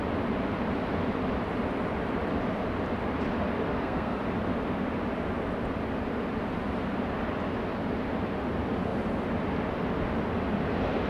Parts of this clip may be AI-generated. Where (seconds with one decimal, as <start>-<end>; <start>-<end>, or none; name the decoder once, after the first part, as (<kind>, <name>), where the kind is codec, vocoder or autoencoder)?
3.7-4.2 (codec, SNAC)